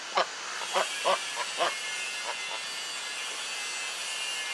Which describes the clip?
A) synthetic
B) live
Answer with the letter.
B